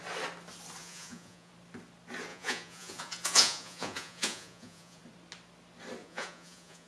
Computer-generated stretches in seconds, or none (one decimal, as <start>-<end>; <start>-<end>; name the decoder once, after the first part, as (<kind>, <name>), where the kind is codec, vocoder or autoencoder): 0.8-1.5 (vocoder, Vocos); 2.3-5.0; 6.0-6.9